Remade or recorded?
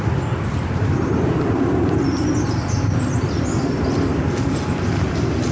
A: recorded